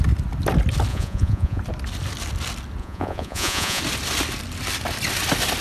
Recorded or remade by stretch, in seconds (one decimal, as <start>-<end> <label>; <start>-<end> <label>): 0.0-0.9 recorded; 0.9-1.6 remade; 1.6-2.8 recorded; 2.8-3.8 remade; 3.8-5.6 recorded